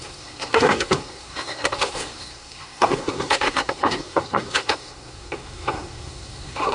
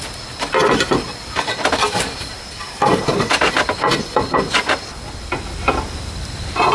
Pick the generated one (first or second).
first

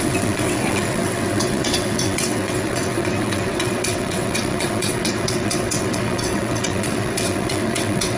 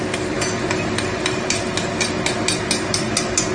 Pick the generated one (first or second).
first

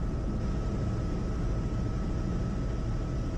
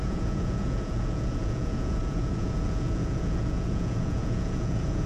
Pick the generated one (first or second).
second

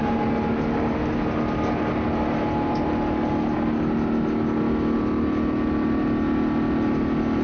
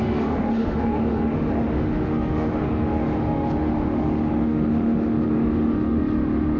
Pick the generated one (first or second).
second